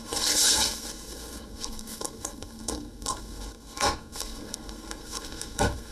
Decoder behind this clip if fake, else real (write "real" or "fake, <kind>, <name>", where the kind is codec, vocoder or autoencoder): fake, codec, SNAC